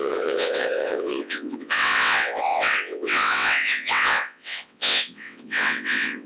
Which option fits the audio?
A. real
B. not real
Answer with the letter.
B